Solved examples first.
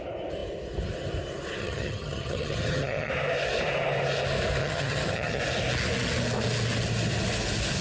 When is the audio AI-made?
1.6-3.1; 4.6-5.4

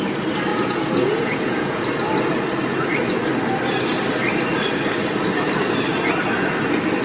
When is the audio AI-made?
0.5-1.9